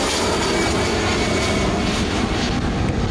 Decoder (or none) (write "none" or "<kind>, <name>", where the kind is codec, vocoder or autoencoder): none